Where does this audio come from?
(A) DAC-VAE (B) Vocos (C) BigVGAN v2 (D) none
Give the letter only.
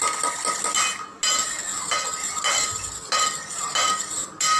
D